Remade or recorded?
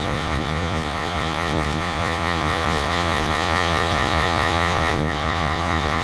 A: remade